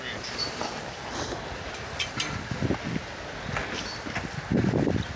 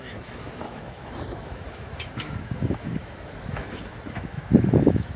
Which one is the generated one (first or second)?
second